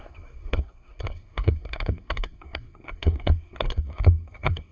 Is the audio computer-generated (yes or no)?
yes